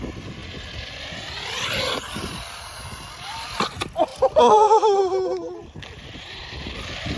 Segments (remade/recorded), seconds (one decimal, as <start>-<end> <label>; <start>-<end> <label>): 0.0-4.1 recorded; 4.1-5.0 remade; 5.0-7.2 recorded